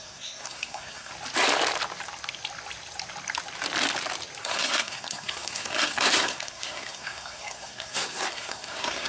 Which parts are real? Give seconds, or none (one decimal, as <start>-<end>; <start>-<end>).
1.1-4.4